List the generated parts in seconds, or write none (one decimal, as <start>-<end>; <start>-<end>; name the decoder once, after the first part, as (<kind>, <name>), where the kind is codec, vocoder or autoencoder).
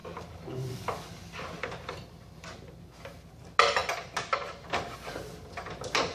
none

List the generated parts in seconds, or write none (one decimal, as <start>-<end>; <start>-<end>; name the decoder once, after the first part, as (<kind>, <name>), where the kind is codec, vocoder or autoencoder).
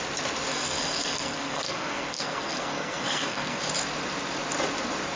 0.5-3.6 (codec, SNAC)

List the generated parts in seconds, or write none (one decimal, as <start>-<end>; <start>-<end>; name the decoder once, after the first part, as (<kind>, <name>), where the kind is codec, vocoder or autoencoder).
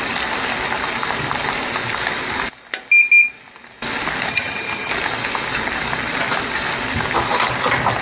4.3-4.9 (vocoder, HiFi-GAN)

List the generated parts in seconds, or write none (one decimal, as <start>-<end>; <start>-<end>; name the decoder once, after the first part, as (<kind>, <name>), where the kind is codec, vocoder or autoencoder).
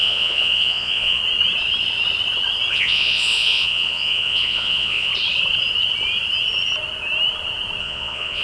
0.0-1.2 (vocoder, Vocos); 2.7-5.1; 7.8-8.4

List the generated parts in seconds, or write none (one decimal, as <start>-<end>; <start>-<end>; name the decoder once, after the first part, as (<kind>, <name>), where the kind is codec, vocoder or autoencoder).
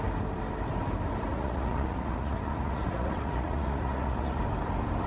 1.3-4.4 (vocoder, Vocos)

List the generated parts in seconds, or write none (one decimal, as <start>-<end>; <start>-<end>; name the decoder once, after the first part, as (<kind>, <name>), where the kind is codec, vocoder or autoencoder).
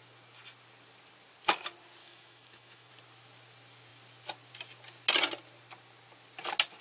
2.0-2.9 (autoencoder, DAC-VAE)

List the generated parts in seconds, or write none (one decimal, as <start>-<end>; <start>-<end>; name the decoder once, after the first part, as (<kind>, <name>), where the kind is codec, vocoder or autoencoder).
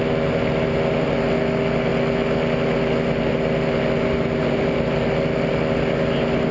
none